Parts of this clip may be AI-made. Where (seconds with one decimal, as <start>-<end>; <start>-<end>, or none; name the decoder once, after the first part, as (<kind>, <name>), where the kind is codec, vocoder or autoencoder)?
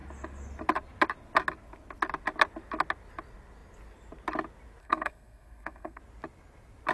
4.8-6.0 (codec, SNAC)